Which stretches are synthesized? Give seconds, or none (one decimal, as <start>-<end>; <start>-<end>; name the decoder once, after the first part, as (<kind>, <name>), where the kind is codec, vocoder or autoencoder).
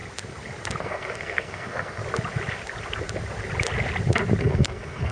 0.8-2.0 (codec, SNAC); 4.4-5.1